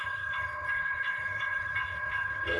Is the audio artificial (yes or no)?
yes